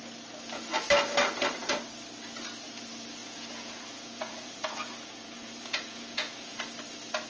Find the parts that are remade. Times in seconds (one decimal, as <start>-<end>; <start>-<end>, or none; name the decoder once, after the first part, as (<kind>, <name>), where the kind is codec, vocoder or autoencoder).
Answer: 3.2-6.6 (vocoder, Vocos)